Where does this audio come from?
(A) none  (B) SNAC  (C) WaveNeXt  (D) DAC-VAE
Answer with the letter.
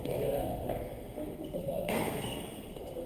B